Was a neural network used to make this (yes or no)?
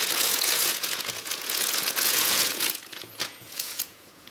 yes